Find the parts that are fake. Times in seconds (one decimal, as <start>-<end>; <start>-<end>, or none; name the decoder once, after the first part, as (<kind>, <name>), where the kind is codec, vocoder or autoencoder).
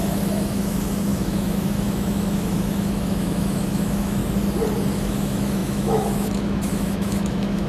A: 0.0-4.2 (autoencoder, DAC-VAE); 4.9-7.7